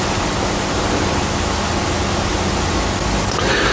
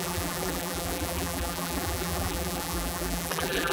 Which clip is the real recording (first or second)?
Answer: first